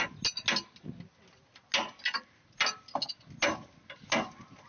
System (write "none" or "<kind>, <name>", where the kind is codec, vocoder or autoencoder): none